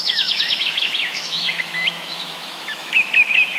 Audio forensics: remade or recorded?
remade